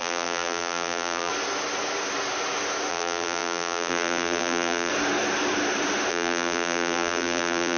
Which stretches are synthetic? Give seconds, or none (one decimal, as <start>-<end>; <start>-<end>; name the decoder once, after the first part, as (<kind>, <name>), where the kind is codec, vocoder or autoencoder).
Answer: 0.0-1.3 (vocoder, BigVGAN v2); 2.9-4.9; 6.1-7.8